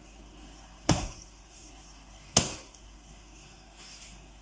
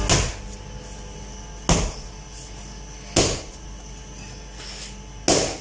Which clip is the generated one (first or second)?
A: first